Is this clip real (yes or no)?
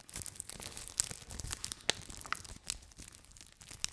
yes